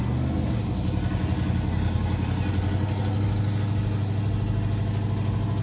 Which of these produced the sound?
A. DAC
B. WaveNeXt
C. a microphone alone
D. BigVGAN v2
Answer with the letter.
C